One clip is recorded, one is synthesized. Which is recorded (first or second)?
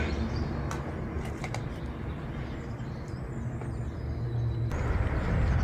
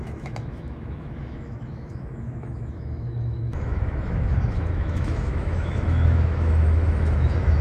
first